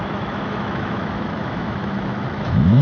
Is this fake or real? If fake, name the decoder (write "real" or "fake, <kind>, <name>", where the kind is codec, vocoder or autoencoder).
fake, autoencoder, DAC-VAE